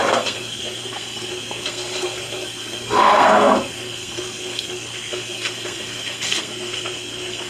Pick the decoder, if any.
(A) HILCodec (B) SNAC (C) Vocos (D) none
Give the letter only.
B